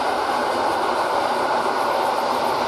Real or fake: real